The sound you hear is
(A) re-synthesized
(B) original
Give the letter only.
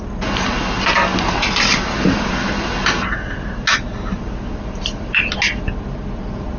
B